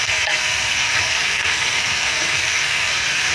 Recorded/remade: remade